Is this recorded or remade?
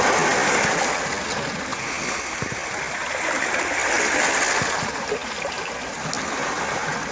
recorded